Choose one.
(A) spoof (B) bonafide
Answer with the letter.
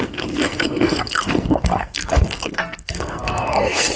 A